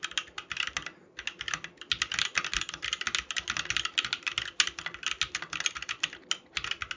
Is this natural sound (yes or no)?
yes